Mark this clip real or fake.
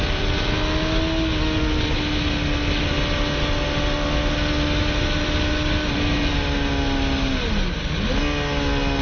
real